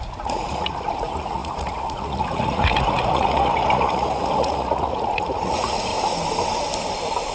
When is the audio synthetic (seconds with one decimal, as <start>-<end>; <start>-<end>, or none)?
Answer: 0.0-5.9